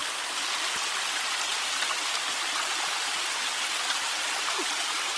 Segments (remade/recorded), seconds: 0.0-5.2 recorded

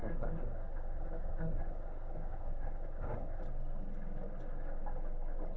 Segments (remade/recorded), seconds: 0.0-3.4 remade; 3.4-5.6 recorded